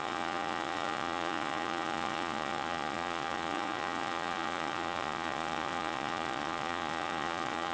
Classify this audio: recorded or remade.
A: remade